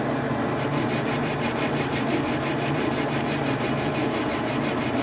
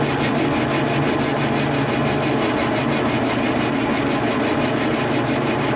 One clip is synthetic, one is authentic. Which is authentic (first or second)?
second